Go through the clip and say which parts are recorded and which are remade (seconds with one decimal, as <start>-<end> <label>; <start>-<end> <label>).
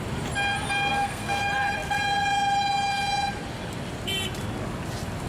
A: 0.0-0.9 recorded; 0.9-1.4 remade; 1.4-5.3 recorded